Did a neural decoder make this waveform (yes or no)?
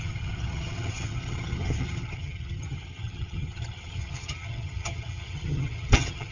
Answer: yes